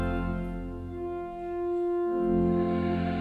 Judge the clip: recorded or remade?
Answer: recorded